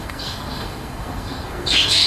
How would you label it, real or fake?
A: fake